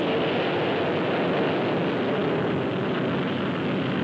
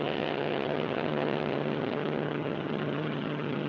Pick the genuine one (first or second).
first